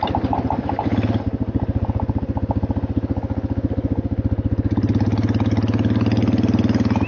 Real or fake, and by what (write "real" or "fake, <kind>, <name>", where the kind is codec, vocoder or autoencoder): real